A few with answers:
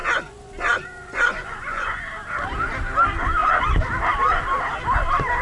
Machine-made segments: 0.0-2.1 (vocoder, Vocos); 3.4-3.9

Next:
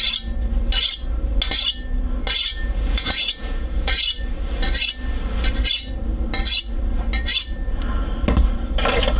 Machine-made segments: 2.5-3.9 (vocoder, Vocos)

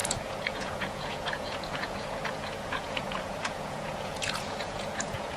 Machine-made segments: 0.0-5.4 (vocoder, Vocos)

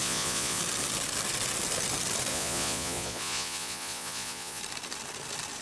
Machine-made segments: 0.0-0.6 (vocoder, Vocos); 2.3-4.6

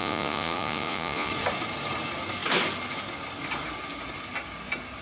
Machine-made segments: 0.0-1.3 (vocoder, Vocos)